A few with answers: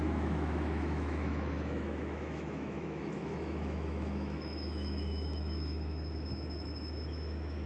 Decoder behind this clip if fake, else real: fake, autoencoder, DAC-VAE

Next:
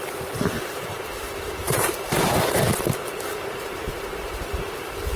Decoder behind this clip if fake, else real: fake, vocoder, BigVGAN v2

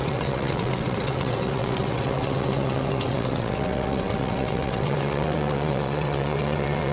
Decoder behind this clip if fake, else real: fake, vocoder, WaveNeXt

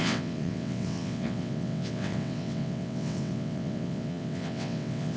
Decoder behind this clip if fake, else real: fake, vocoder, WaveNeXt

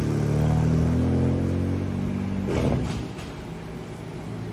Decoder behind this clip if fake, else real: real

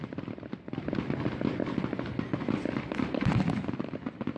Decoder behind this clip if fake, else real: real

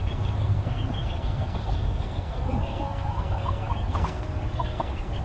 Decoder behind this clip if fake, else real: fake, codec, SNAC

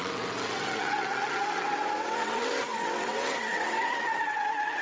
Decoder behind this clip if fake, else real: fake, vocoder, WaveNeXt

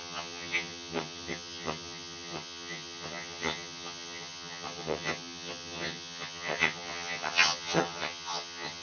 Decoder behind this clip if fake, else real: fake, vocoder, HiFi-GAN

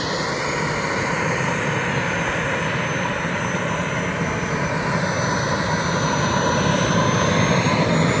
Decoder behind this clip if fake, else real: real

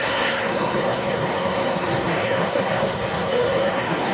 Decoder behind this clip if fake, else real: fake, codec, SNAC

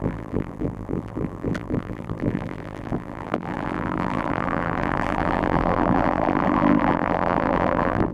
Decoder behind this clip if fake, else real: fake, vocoder, BigVGAN v2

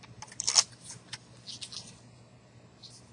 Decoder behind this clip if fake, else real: real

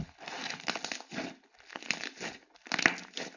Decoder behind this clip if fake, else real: real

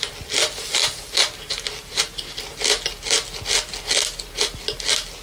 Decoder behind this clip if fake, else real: real